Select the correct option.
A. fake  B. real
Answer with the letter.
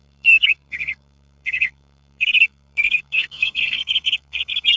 A